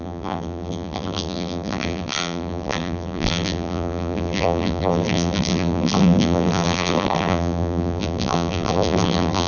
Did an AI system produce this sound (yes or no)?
yes